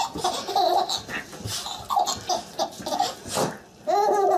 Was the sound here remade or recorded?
recorded